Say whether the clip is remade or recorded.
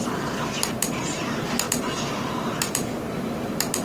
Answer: recorded